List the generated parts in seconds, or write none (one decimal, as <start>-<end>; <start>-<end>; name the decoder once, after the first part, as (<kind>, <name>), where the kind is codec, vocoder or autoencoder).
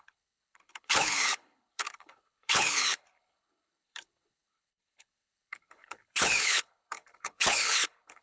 0.0-8.2 (codec, HILCodec)